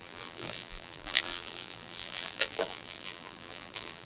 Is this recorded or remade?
remade